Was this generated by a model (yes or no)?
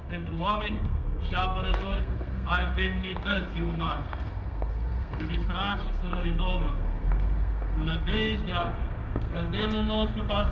yes